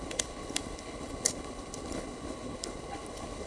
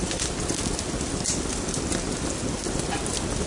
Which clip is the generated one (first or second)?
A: first